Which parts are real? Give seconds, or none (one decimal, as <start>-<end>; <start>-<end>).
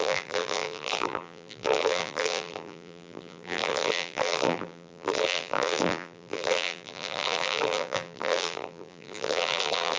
none